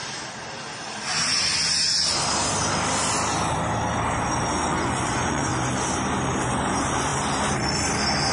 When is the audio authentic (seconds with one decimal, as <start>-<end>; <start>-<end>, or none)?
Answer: 0.0-4.7; 5.5-6.4; 7.1-8.3